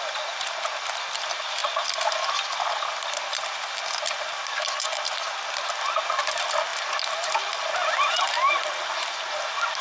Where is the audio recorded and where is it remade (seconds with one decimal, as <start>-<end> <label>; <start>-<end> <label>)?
0.0-9.8 recorded